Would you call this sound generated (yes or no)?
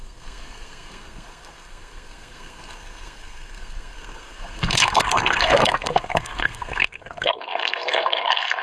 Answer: yes